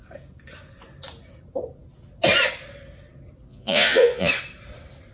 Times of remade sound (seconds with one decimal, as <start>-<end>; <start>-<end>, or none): 3.5-4.3